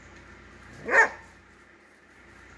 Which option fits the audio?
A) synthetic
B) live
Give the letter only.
B